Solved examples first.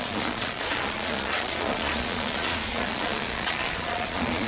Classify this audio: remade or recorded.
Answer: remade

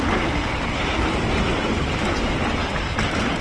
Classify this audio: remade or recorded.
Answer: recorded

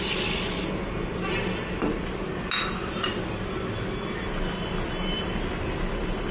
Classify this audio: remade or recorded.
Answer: recorded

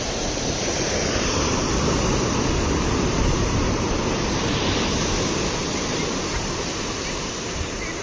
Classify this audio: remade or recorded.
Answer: recorded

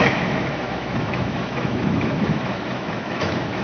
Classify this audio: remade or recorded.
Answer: remade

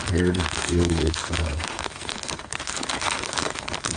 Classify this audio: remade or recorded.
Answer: remade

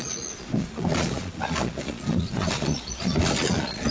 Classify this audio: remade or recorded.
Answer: remade